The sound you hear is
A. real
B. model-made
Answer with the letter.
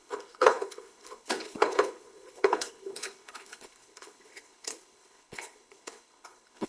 B